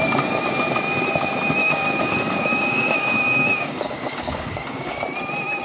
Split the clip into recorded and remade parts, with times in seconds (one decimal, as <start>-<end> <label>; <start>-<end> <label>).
0.0-1.6 recorded; 1.6-5.0 remade; 5.0-5.6 recorded